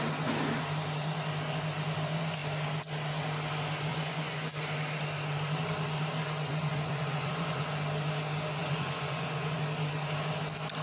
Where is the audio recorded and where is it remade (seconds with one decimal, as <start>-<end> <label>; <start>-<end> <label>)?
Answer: 0.0-3.9 recorded; 3.9-4.5 remade; 4.5-6.5 recorded; 6.5-7.7 remade; 7.7-8.6 recorded; 8.6-9.6 remade; 9.6-10.8 recorded